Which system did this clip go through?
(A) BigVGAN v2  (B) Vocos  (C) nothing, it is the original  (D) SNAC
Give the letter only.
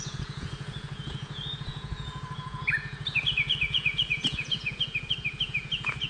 B